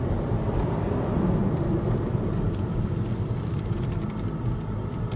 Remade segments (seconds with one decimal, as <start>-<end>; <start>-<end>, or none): none